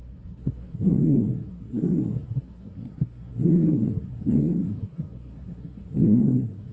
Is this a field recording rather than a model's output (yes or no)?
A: no